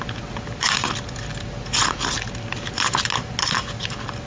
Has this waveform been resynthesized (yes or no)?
no